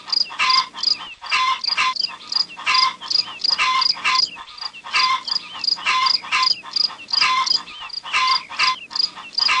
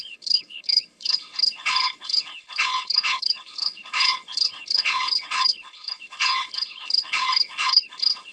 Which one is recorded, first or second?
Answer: first